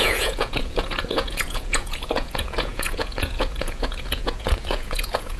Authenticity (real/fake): fake